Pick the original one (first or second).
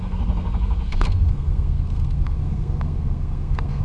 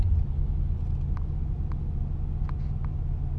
second